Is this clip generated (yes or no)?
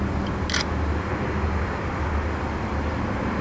no